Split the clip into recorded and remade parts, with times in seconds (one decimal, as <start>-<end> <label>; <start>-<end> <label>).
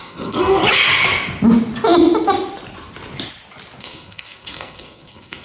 0.0-0.6 remade; 0.6-3.8 recorded; 3.8-5.4 remade